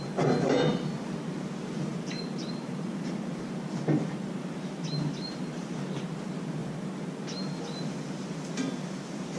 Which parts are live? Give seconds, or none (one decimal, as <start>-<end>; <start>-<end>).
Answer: 0.0-1.9; 6.0-9.4